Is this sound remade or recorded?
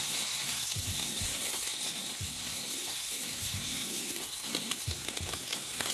remade